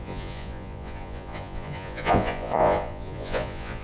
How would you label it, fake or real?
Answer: fake